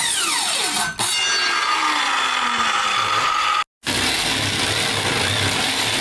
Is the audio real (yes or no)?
yes